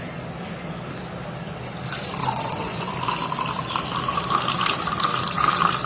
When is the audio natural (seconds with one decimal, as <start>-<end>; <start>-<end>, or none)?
0.0-2.2; 2.9-5.9